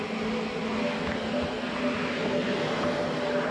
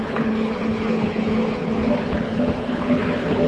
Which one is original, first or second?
first